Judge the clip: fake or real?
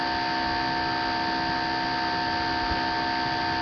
real